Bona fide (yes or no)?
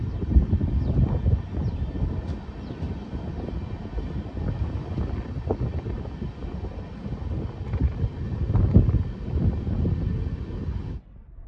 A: yes